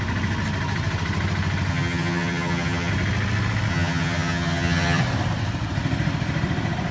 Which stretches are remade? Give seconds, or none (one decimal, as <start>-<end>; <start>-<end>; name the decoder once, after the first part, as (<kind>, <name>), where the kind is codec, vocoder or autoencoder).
1.7-2.9 (vocoder, HiFi-GAN); 3.7-5.0